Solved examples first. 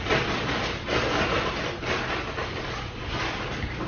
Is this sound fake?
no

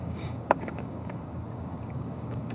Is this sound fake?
yes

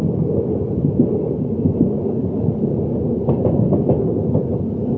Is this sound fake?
no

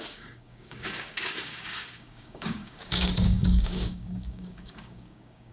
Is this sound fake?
yes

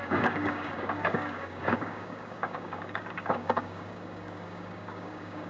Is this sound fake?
yes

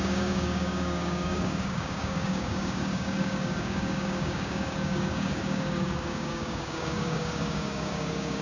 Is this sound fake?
yes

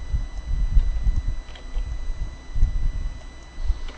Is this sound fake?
no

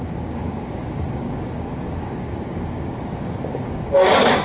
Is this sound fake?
yes